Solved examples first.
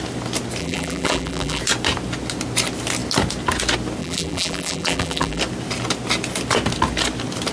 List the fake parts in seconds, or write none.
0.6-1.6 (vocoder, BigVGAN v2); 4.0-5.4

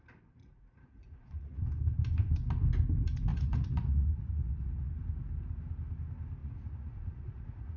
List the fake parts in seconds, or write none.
0.4-1.6 (vocoder, Vocos); 3.3-4.9; 6.4-7.8

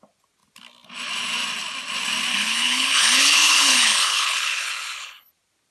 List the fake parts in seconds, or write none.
2.3-5.3 (codec, HILCodec)

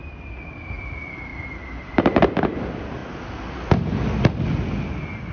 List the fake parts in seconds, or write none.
1.3-2.2 (vocoder, BigVGAN v2); 3.0-4.1

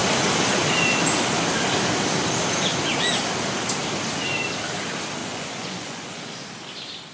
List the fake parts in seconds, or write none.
5.2-6.5 (vocoder, Vocos)

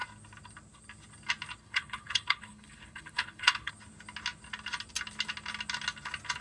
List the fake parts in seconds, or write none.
1.6-3.7 (codec, HILCodec)

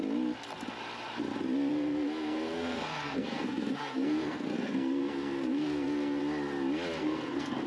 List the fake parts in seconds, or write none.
1.7-6.2 (codec, SNAC); 7.0-7.7

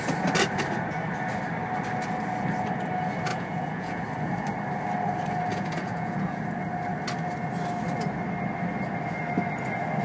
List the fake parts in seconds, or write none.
3.3-4.0 (vocoder, Vocos); 5.5-6.4